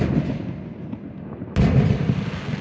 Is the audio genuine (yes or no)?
yes